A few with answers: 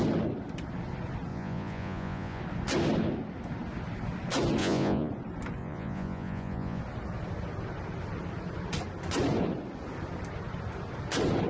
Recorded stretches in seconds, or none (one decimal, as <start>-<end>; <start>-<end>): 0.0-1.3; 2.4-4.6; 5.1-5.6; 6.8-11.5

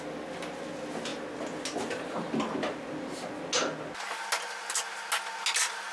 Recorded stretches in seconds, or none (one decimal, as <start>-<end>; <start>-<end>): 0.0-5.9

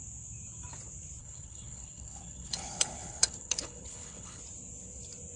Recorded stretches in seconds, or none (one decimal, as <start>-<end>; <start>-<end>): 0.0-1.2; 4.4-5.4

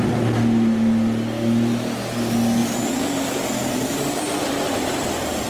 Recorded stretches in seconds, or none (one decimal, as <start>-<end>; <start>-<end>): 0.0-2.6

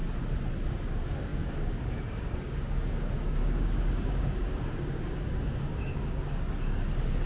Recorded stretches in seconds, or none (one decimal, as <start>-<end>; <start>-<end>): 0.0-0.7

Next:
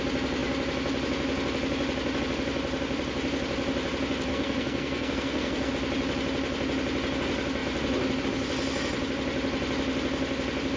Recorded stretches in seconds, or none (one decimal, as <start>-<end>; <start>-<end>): 0.0-4.3; 5.7-10.8